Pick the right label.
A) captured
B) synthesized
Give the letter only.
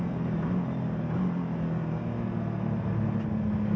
A